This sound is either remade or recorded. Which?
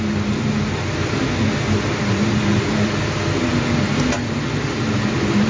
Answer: recorded